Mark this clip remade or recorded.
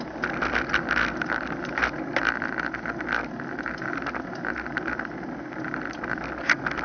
recorded